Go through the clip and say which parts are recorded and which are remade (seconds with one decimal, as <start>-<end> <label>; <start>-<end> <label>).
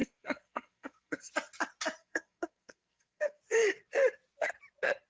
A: 0.0-1.3 remade; 1.3-2.0 recorded; 2.0-3.4 remade; 3.4-5.1 recorded